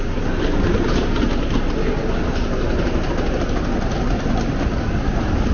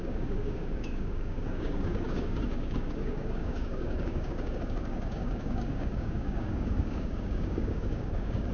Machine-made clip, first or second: second